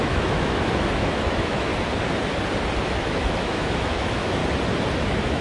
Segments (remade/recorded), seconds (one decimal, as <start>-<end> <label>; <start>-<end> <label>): 0.0-1.7 remade; 1.7-2.8 recorded; 2.8-4.4 remade; 4.4-5.0 recorded; 5.0-5.4 remade